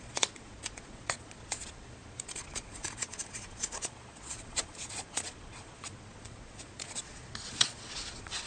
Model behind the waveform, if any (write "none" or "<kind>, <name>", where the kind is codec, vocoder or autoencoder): vocoder, Vocos